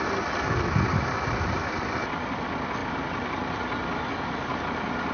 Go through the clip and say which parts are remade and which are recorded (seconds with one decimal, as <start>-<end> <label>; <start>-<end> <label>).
0.0-5.1 recorded